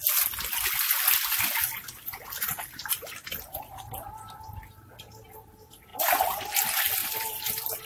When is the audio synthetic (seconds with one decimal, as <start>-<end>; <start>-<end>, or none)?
5.9-6.4; 7.0-7.8